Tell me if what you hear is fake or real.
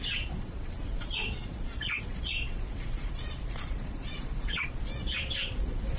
fake